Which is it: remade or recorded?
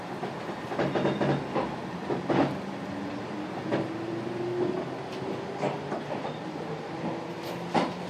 recorded